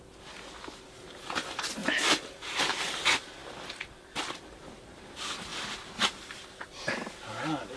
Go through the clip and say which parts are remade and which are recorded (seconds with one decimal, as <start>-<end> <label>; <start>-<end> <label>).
0.0-1.8 recorded; 1.8-3.0 remade; 3.0-7.8 recorded